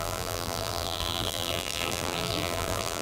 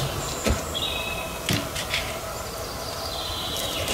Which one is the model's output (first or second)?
first